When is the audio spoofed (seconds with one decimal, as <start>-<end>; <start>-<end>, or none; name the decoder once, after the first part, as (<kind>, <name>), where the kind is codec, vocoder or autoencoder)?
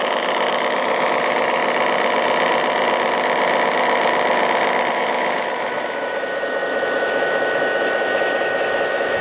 0.0-1.6 (autoencoder, DAC-VAE); 4.9-9.2